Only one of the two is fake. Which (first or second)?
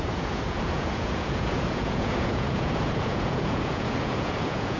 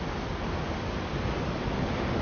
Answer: first